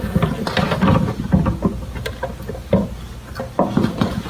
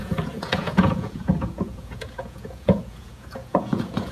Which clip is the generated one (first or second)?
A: second